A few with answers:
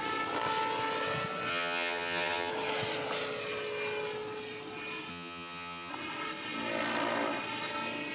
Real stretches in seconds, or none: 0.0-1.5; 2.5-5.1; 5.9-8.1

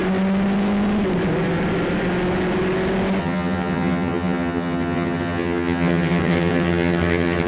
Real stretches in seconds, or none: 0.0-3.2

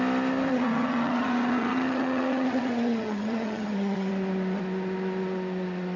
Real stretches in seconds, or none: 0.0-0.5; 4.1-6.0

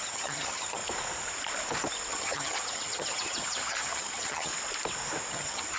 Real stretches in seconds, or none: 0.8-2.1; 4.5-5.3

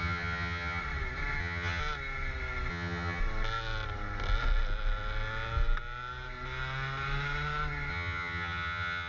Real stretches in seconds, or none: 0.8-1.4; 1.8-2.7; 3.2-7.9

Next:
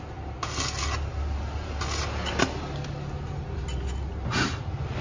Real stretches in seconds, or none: 0.0-5.0

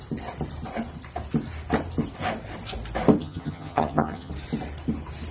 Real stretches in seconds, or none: 0.0-3.2; 4.3-5.3

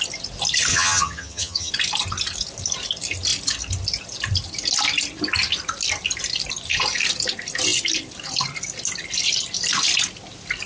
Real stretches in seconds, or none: 0.0-0.7; 1.7-10.7